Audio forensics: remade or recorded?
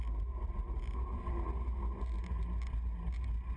recorded